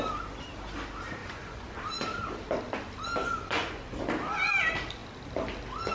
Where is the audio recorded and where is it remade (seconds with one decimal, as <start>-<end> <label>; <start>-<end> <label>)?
0.0-1.2 recorded; 1.2-1.8 remade; 1.8-3.2 recorded; 3.2-4.0 remade; 4.0-5.9 recorded